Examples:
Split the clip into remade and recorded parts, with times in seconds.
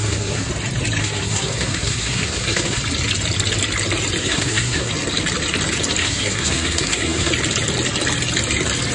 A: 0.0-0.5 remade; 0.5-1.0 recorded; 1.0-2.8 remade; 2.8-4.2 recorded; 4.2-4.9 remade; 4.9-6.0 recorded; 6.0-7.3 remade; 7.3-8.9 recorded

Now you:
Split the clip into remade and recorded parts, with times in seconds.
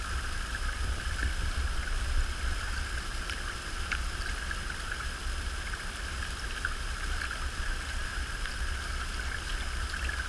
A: 0.0-10.3 recorded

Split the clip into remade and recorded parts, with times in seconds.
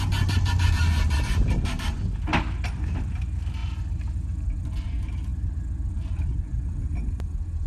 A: 0.0-7.7 recorded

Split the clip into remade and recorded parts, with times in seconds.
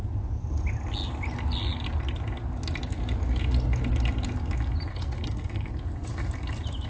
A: 0.0-4.9 recorded; 4.9-5.7 remade; 5.7-6.9 recorded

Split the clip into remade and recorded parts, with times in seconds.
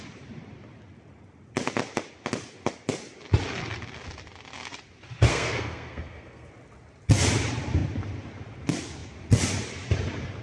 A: 0.0-5.3 recorded; 5.3-6.5 remade; 6.5-10.4 recorded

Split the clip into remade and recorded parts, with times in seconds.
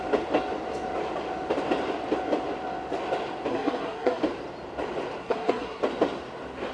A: 0.0-3.5 recorded; 3.5-4.2 remade; 4.2-5.2 recorded; 5.2-5.8 remade; 5.8-6.7 recorded